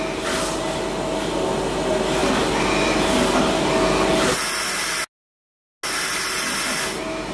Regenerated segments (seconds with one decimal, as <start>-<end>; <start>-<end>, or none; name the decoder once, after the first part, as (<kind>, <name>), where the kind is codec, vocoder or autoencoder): none